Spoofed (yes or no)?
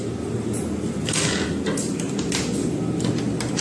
no